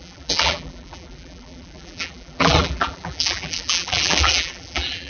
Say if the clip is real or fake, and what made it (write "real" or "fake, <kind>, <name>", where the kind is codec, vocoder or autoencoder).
fake, vocoder, BigVGAN v2